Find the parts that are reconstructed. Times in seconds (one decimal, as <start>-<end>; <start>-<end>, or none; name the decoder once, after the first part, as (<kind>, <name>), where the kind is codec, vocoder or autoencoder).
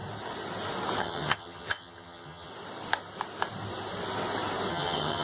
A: 1.0-2.5 (vocoder, HiFi-GAN); 4.7-5.2